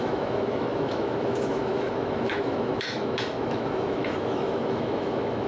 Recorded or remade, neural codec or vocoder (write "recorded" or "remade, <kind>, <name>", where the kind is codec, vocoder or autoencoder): remade, autoencoder, DAC-VAE